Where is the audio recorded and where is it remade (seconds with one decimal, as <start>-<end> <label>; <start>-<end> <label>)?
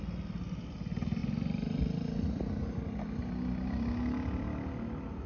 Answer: 0.0-5.3 recorded